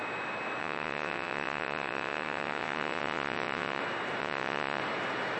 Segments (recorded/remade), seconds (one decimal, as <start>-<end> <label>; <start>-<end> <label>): 0.0-0.6 recorded; 0.6-3.8 remade; 3.8-4.2 recorded; 4.2-4.8 remade; 4.8-5.4 recorded